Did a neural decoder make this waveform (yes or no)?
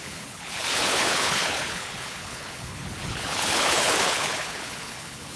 yes